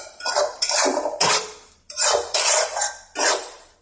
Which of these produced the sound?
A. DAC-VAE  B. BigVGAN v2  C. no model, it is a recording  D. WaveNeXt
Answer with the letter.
B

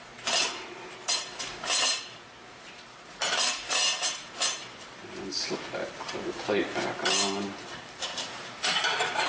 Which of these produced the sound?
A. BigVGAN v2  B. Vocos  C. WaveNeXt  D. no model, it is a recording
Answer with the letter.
A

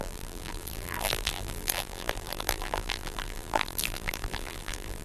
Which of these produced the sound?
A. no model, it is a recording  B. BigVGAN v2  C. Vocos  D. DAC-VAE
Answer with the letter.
B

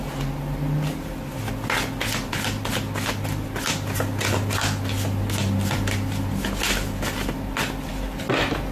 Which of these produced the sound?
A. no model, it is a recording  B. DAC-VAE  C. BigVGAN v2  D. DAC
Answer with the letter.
A